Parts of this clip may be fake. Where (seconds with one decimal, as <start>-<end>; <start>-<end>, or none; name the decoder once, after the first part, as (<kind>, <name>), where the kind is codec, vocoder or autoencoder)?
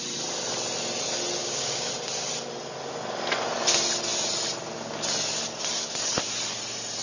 1.4-1.9 (codec, DAC)